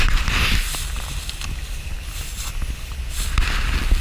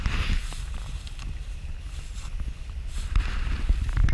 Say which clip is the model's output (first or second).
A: second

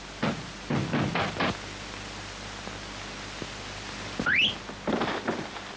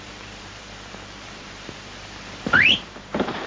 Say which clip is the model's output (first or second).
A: second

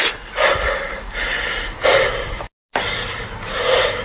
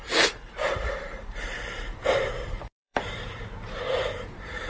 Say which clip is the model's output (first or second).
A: second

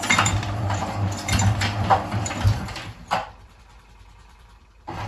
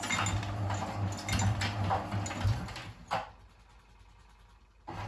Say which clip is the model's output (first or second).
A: first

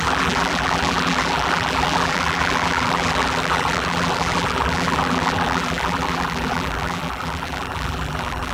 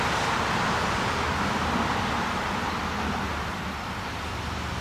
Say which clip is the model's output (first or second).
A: first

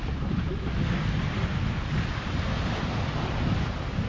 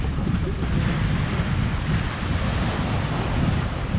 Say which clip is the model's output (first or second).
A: second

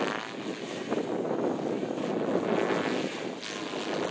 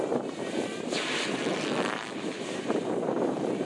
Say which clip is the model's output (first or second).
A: second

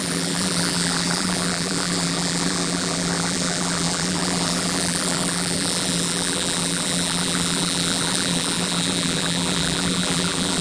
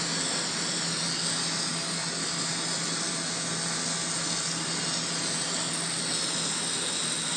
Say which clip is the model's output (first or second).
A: first